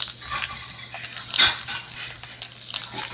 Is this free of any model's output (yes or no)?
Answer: yes